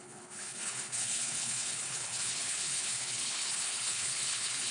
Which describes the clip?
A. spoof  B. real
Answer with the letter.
A